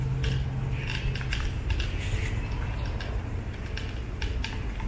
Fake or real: real